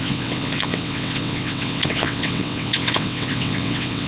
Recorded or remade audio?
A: remade